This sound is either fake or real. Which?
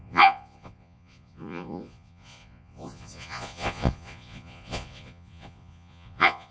fake